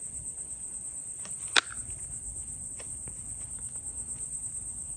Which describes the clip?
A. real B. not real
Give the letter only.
A